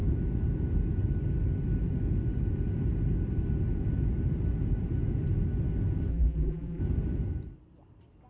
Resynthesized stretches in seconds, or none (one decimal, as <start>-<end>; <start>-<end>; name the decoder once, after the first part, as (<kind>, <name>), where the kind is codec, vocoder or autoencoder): 6.1-6.8 (vocoder, BigVGAN v2)